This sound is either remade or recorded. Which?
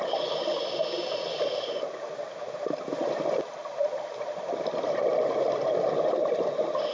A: recorded